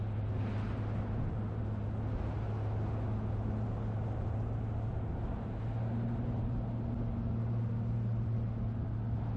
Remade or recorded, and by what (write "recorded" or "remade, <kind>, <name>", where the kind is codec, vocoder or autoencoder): recorded